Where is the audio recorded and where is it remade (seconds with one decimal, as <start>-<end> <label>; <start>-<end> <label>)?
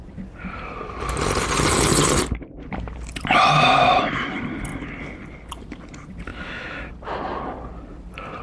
0.0-6.3 recorded; 6.3-6.9 remade; 6.9-8.4 recorded